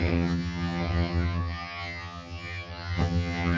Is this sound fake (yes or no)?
yes